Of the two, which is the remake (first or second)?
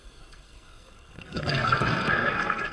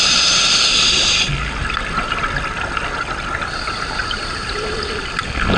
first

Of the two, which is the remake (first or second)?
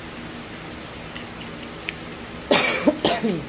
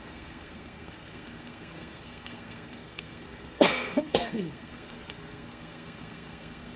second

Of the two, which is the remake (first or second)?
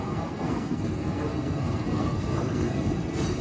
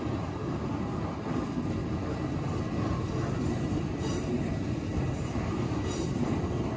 first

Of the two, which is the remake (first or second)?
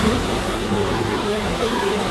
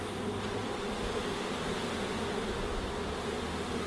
first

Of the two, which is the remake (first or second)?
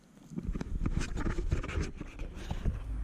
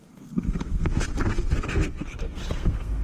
second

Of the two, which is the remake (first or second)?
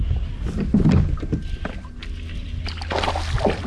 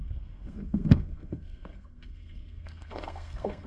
second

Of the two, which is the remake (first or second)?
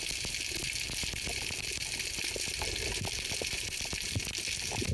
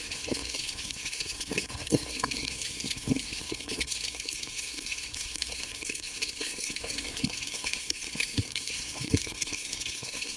second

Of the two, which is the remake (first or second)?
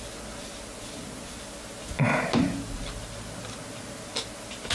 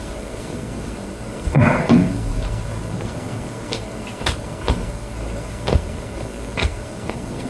second